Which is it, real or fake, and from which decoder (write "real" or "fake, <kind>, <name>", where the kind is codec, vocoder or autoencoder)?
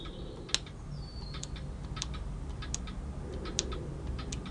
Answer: real